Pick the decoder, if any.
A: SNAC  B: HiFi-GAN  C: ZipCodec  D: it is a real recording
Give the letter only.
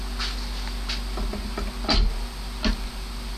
D